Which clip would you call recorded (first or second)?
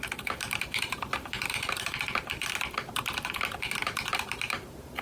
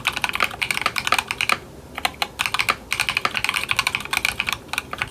second